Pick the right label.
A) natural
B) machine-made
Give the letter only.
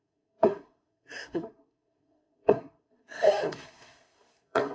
B